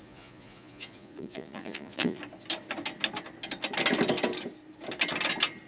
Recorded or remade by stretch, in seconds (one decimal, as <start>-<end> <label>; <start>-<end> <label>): 0.0-2.2 remade; 2.2-5.7 recorded